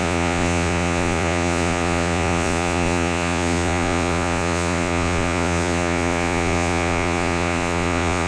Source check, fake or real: fake